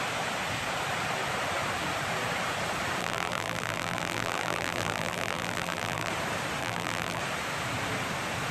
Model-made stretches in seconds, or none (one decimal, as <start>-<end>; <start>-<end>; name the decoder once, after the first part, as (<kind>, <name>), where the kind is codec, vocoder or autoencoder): 3.0-6.1 (vocoder, BigVGAN v2); 6.6-7.2